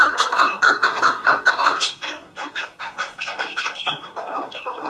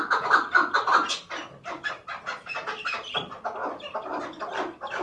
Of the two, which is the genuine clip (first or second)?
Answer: second